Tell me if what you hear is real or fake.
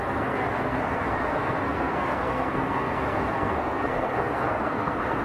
fake